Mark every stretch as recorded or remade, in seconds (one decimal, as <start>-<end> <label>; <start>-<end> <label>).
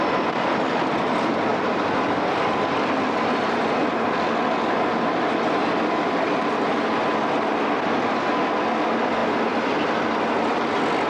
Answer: 0.0-11.1 recorded